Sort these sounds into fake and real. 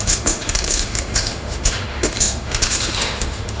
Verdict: fake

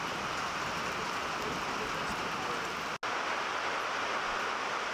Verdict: real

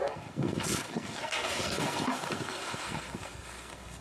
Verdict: fake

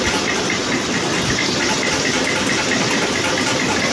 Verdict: real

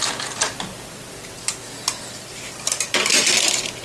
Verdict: real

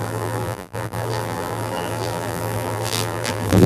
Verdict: fake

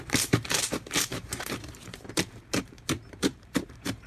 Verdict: fake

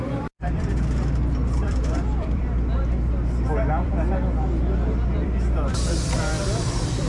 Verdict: fake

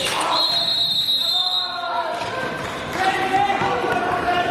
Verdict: real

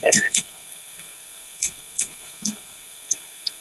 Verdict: fake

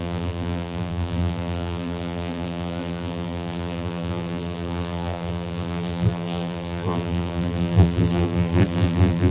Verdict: fake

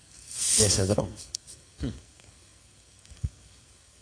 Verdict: fake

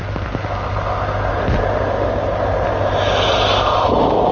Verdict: real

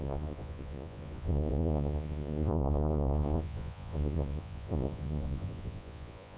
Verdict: fake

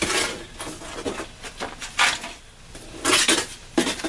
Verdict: real